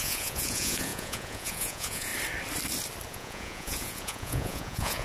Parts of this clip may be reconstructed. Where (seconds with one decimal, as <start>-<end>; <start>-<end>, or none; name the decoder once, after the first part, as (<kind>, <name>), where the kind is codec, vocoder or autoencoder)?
0.0-2.1 (vocoder, Vocos); 3.1-5.0